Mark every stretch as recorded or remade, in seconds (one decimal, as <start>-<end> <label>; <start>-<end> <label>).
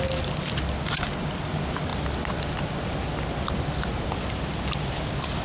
0.0-5.4 recorded